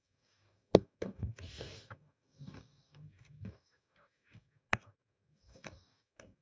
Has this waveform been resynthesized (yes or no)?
yes